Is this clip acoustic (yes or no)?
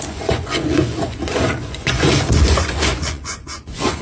no